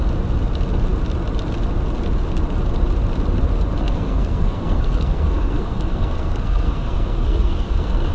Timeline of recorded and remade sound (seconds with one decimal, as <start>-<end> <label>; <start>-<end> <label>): 0.0-3.8 recorded; 3.8-8.1 remade